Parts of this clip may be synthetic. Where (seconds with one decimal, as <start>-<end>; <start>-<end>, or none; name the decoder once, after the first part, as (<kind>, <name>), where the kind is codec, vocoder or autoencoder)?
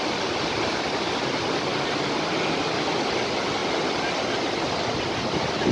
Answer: none